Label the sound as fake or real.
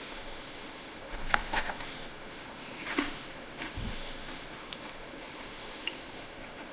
fake